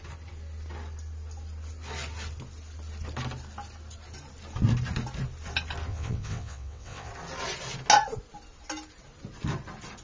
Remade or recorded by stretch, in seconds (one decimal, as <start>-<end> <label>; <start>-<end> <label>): 0.0-5.9 recorded; 5.9-7.1 remade; 7.1-10.0 recorded